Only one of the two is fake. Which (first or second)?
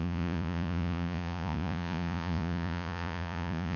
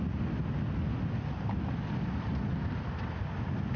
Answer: first